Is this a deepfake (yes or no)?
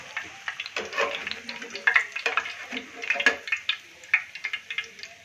no